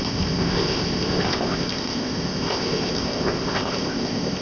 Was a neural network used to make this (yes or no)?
yes